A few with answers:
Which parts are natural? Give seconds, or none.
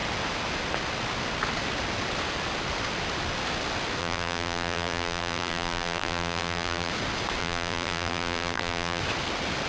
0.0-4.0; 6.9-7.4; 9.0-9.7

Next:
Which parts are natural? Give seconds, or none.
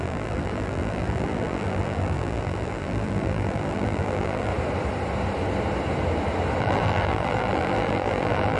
4.5-6.6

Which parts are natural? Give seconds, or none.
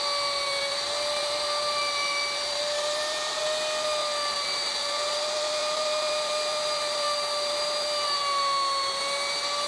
0.0-1.2; 3.4-4.0; 8.2-9.7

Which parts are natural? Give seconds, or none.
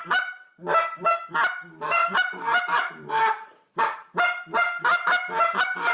0.0-2.0; 5.1-5.9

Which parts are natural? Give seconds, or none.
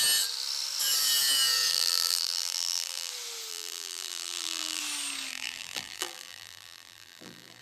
0.0-1.7; 3.1-3.5; 4.8-5.3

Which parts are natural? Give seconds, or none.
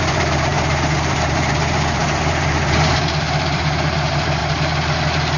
4.4-5.4